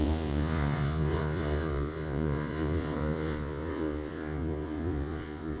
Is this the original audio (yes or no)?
no